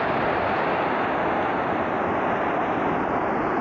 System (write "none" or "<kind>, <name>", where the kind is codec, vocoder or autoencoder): none